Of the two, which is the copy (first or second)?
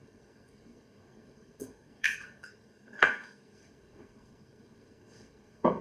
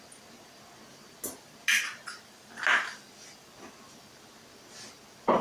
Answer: first